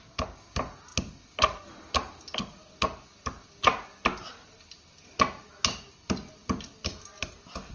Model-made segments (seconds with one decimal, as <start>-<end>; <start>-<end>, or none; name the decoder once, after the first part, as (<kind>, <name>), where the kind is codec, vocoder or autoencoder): none